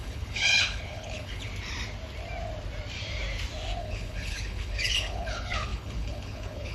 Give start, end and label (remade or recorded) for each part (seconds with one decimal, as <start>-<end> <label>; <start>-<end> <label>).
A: 0.0-1.5 remade; 1.5-3.8 recorded; 3.8-6.7 remade